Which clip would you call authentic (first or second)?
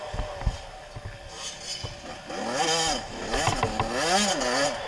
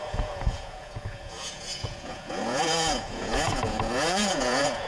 first